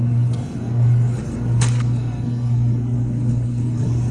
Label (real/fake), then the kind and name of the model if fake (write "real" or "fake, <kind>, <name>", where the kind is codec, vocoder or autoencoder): fake, codec, SNAC